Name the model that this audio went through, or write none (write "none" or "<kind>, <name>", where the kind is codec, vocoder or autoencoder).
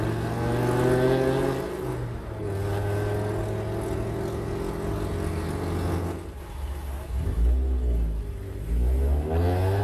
none